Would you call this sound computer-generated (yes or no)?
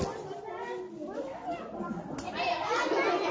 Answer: no